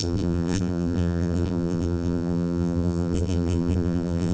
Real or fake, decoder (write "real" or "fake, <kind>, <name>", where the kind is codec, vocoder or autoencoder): fake, vocoder, BigVGAN v2